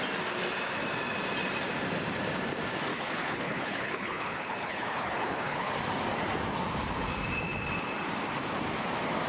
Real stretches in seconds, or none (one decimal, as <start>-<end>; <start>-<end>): 0.0-2.9; 5.7-9.3